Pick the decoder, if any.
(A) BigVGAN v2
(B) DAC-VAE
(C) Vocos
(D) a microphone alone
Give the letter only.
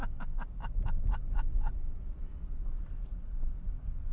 D